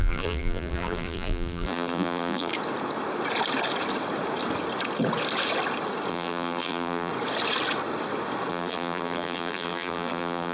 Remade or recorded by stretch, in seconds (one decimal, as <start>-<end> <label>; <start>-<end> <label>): 0.0-2.5 remade; 2.5-6.1 recorded; 6.1-7.1 remade; 7.1-8.5 recorded; 8.5-10.5 remade